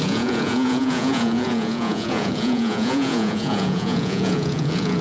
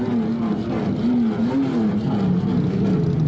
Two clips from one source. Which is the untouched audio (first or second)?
second